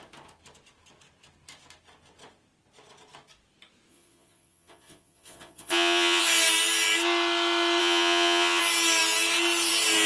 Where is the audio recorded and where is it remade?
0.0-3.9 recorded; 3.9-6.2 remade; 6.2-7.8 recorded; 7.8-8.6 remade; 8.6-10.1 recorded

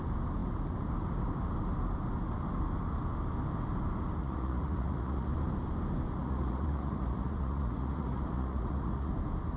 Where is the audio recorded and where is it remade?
0.0-4.2 recorded; 4.2-5.3 remade; 5.3-6.2 recorded; 6.2-9.1 remade; 9.1-9.6 recorded

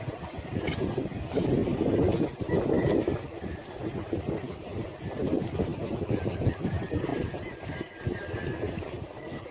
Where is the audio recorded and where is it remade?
0.0-9.5 recorded

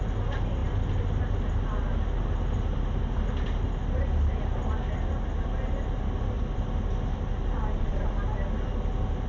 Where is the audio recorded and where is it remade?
0.0-9.3 recorded

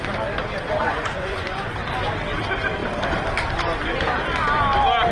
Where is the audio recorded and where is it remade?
0.0-0.8 recorded; 0.8-1.7 remade; 1.7-5.1 recorded

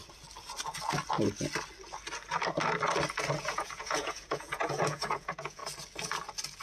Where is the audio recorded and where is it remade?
0.0-3.4 recorded; 3.4-5.6 remade; 5.6-6.6 recorded

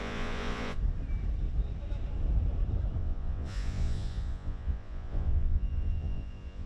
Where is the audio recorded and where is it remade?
0.0-0.8 remade; 0.8-3.0 recorded; 3.0-6.7 remade

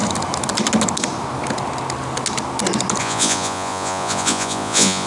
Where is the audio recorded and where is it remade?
0.0-3.0 recorded; 3.0-5.1 remade